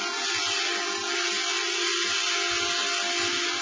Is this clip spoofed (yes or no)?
no